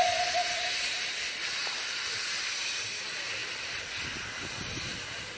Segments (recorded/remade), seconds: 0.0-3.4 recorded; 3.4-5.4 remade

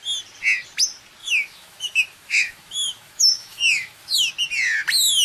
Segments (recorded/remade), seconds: 0.0-1.2 recorded; 1.2-4.3 remade; 4.3-5.2 recorded

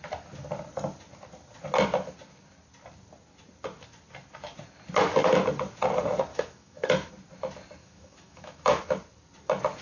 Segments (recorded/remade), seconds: 0.0-6.3 recorded; 6.3-7.1 remade; 7.1-7.8 recorded; 7.8-8.8 remade; 8.8-9.8 recorded